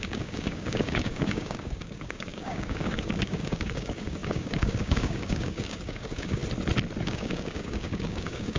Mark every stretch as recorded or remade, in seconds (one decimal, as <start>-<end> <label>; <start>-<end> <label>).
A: 0.0-6.4 remade; 6.4-7.0 recorded; 7.0-8.6 remade